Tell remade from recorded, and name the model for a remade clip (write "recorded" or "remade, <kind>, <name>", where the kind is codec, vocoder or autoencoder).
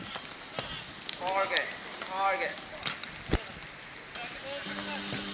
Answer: recorded